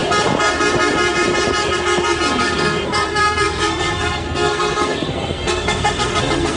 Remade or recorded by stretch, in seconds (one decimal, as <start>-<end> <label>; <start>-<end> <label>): 0.0-2.4 recorded; 2.4-6.6 remade